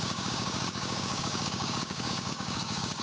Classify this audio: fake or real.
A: fake